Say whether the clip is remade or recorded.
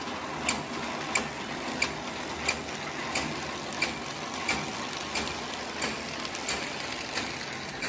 recorded